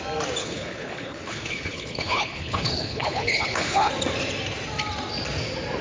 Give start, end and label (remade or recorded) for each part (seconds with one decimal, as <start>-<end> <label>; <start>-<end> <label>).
0.0-0.4 recorded; 0.4-3.9 remade; 3.9-5.8 recorded